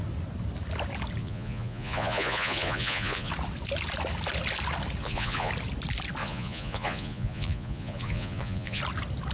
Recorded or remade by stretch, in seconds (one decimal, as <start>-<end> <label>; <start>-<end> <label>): 0.0-1.2 recorded; 1.2-3.3 remade; 3.3-5.0 recorded; 5.0-5.5 remade; 5.5-6.2 recorded; 6.2-8.8 remade; 8.8-9.3 recorded

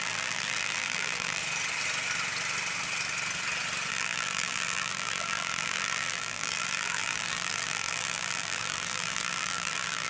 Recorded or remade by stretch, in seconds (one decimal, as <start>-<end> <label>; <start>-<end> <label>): 0.0-1.4 remade; 1.4-3.9 recorded; 3.9-10.1 remade

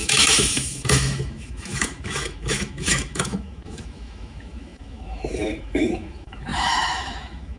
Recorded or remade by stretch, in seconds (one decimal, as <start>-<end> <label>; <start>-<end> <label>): 0.0-7.6 remade

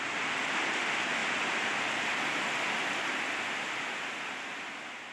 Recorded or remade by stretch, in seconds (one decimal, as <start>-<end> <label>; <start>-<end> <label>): 0.0-5.1 recorded

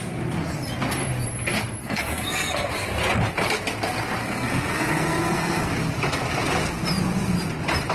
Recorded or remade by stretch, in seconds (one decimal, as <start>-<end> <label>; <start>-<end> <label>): 0.0-1.8 recorded; 1.8-2.7 remade; 2.7-4.2 recorded; 4.2-5.7 remade; 5.7-7.9 recorded

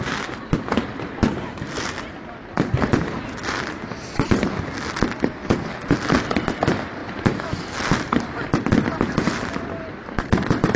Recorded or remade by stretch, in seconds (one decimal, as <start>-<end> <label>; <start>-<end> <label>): 0.0-10.8 recorded

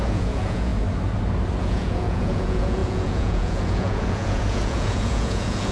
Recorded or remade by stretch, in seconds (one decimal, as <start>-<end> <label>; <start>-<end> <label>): 0.0-0.7 remade; 0.7-1.6 recorded; 1.6-5.7 remade